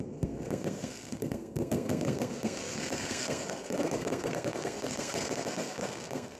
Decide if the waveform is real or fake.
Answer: fake